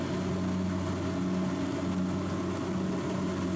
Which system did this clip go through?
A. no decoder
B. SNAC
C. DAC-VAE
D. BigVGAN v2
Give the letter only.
A